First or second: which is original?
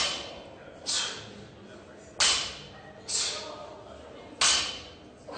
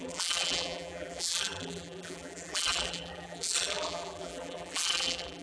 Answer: first